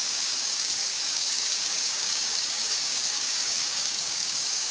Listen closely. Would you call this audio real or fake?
fake